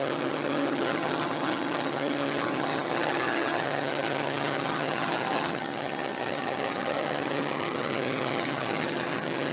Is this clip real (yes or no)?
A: no